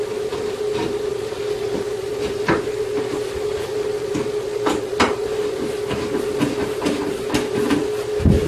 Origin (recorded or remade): remade